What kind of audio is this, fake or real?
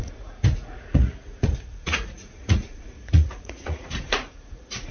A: fake